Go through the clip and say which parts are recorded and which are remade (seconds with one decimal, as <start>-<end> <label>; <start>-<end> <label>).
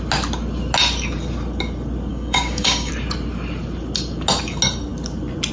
0.0-2.1 recorded; 2.1-2.9 remade; 2.9-5.5 recorded